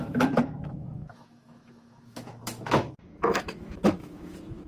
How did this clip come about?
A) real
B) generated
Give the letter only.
B